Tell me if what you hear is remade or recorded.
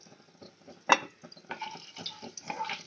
recorded